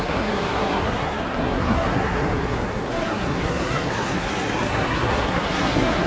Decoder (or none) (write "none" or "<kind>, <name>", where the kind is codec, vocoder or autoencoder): codec, SNAC